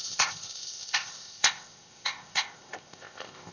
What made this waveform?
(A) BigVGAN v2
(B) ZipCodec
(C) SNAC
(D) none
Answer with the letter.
B